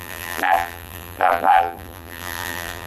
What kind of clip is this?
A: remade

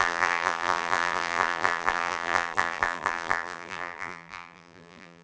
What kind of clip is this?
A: remade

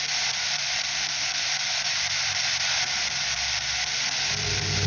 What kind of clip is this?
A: remade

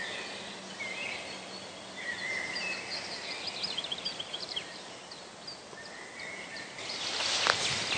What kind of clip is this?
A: recorded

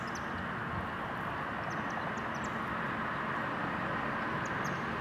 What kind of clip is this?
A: recorded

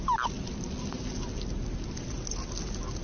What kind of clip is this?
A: recorded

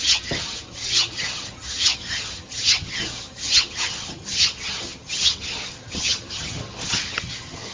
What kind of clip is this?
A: remade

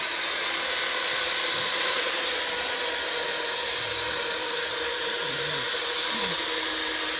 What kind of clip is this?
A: recorded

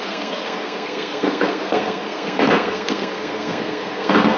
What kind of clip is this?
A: remade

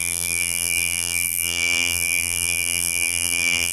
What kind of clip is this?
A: remade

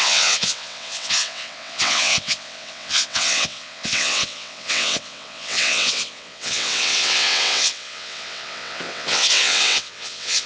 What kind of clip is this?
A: remade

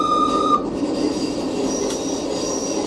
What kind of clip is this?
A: recorded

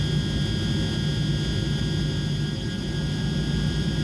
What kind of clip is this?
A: recorded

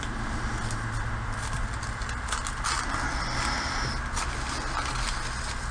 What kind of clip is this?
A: recorded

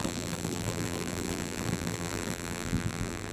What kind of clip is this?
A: remade